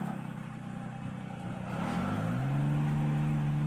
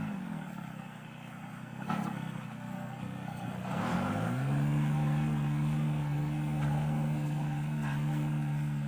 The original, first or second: first